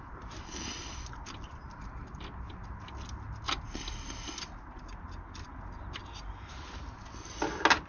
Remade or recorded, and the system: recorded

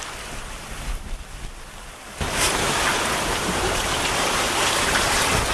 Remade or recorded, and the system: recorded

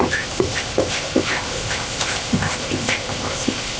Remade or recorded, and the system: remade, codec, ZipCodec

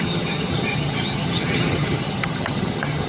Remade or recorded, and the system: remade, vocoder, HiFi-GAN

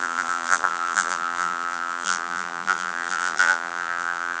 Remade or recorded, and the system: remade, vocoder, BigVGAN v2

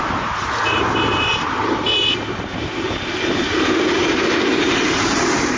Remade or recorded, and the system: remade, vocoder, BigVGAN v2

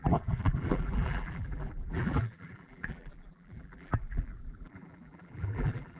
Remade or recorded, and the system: remade, vocoder, BigVGAN v2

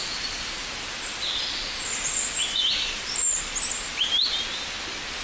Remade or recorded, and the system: recorded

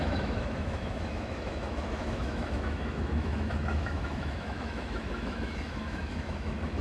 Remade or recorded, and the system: remade, autoencoder, DAC-VAE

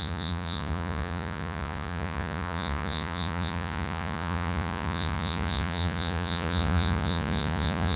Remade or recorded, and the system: remade, vocoder, Vocos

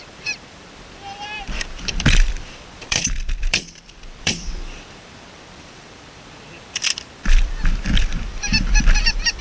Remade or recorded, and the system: remade, vocoder, BigVGAN v2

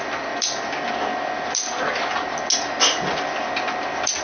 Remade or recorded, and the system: recorded